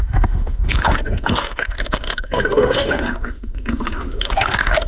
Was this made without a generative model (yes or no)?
no